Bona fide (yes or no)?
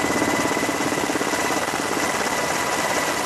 yes